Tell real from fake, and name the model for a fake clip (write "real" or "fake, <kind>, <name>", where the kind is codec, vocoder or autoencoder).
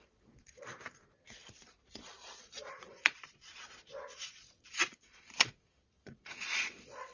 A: fake, vocoder, Vocos